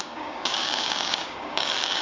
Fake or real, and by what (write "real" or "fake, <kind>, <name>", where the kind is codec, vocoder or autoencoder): fake, codec, DAC